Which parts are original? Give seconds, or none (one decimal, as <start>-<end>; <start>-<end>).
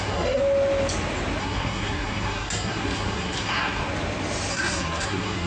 0.4-1.4; 3.8-4.5